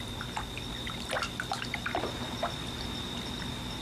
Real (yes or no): yes